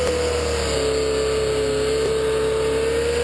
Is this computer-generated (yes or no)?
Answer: no